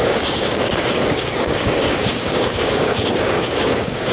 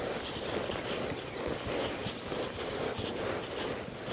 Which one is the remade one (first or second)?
first